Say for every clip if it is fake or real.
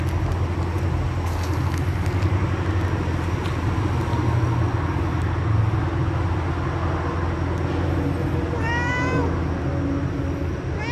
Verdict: real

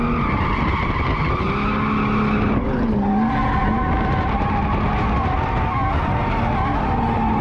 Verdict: real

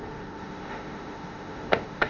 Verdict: fake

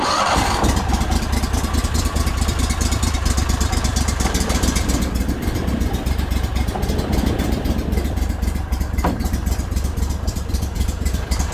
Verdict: fake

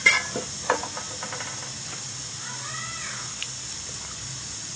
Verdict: real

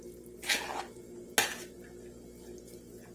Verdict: real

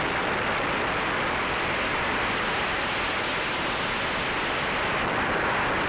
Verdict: real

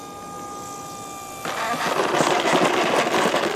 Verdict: real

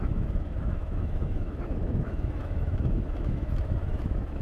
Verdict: fake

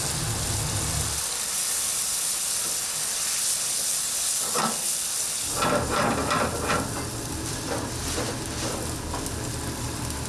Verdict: real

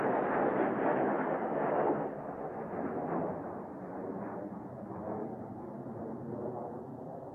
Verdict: real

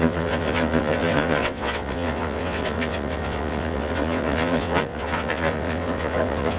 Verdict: fake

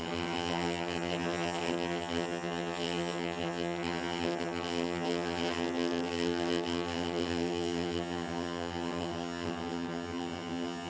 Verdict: fake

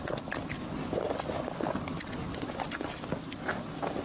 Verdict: real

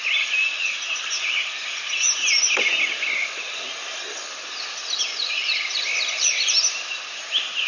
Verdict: real